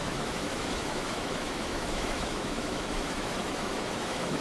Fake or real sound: fake